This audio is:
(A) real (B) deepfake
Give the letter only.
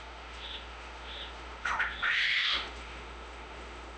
B